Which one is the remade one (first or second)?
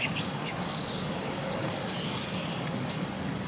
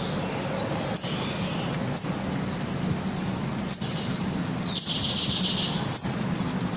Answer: first